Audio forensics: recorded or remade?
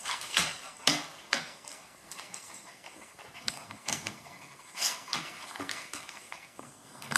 remade